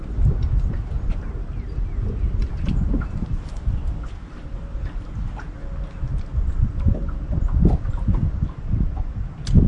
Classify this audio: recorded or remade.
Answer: recorded